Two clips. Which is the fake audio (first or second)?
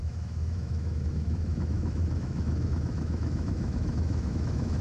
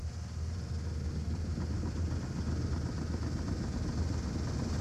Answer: first